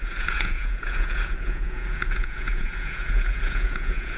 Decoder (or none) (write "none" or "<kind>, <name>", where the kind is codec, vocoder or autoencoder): vocoder, Vocos